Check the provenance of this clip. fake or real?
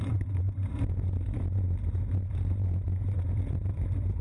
fake